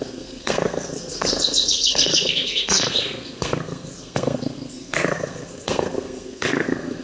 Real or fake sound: fake